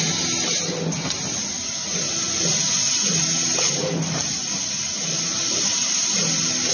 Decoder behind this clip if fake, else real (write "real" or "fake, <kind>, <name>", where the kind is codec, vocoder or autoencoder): real